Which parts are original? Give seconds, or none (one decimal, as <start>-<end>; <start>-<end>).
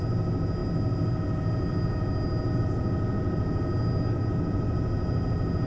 0.0-5.7